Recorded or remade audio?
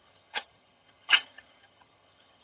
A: remade